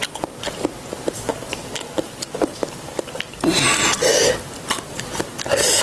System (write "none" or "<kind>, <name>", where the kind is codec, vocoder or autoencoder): none